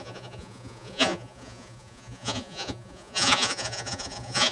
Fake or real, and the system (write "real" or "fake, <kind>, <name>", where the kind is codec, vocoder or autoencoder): fake, vocoder, Vocos